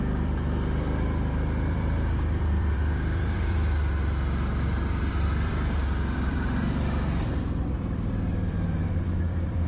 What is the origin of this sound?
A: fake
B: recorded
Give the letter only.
A